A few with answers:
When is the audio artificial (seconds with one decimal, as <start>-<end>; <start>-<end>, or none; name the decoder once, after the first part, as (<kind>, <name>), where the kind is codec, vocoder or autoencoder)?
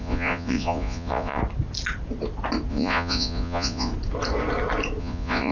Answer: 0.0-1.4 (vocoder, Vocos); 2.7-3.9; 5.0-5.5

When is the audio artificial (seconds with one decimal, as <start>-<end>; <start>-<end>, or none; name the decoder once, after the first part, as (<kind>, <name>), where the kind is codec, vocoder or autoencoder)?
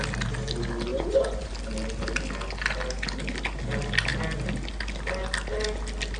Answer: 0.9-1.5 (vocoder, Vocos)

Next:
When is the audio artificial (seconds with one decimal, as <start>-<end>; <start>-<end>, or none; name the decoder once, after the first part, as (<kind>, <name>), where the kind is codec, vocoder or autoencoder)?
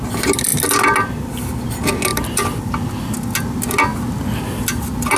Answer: 2.1-2.9 (vocoder, BigVGAN v2)